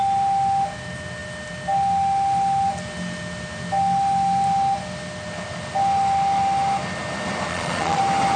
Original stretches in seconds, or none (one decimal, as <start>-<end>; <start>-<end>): 0.0-7.5; 8.0-8.4